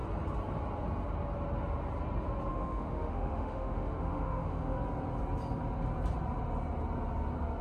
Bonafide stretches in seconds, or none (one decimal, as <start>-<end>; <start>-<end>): 0.0-2.5; 4.8-7.6